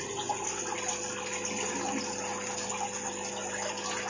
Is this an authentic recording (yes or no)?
yes